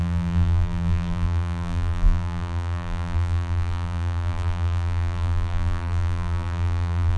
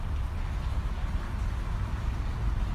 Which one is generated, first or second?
first